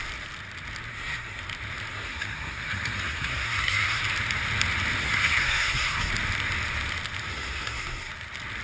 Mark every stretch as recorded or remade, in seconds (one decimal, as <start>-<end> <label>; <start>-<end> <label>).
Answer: 0.0-0.9 recorded; 0.9-1.4 remade; 1.4-1.9 recorded; 1.9-4.0 remade; 4.0-5.0 recorded; 5.0-6.1 remade; 6.1-7.3 recorded; 7.3-8.1 remade; 8.1-8.6 recorded